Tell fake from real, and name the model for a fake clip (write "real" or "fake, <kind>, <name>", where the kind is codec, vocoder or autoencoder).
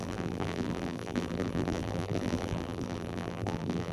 fake, vocoder, BigVGAN v2